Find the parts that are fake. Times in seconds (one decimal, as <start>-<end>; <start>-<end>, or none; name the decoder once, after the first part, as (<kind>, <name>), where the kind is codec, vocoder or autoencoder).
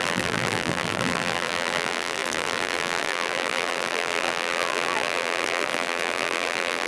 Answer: 0.0-6.9 (vocoder, BigVGAN v2)